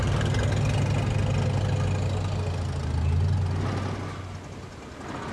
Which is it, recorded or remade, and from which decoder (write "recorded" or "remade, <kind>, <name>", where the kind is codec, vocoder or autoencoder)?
recorded